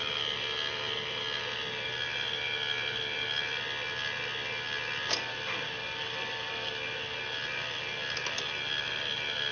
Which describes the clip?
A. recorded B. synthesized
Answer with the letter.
A